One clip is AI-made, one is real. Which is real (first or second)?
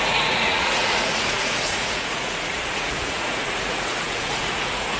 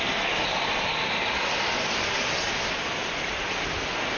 second